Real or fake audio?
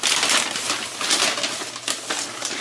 real